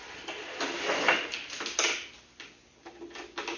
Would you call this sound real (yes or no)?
yes